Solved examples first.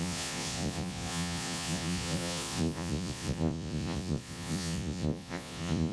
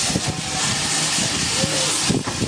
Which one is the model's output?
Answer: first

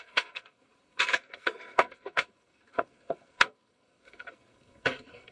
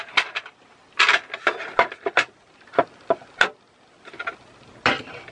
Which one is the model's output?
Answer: first